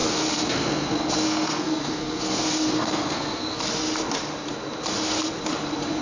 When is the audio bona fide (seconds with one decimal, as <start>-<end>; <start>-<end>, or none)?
3.6-6.0